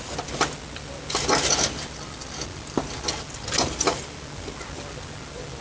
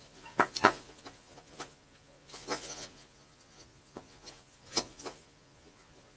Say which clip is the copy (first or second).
second